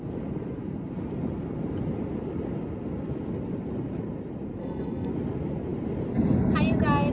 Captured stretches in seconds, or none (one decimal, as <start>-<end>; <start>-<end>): 0.0-4.6; 5.1-7.1

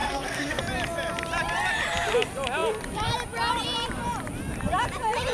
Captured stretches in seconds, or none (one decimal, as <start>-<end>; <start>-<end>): 0.6-5.3